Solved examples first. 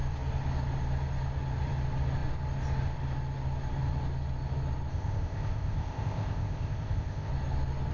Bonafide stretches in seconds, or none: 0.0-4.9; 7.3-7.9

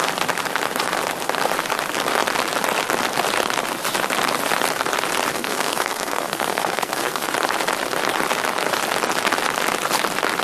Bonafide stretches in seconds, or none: 0.0-5.3; 7.3-10.4